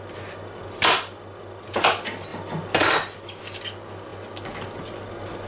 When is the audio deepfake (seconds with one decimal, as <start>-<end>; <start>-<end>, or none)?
none